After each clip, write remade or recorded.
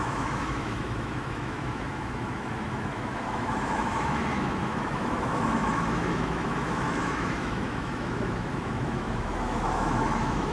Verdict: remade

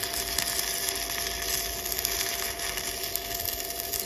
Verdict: recorded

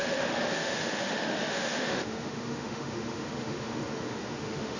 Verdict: remade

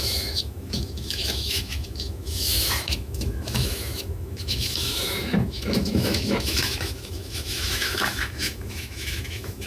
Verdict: remade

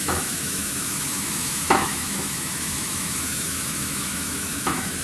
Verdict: remade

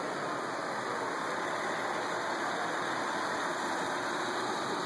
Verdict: recorded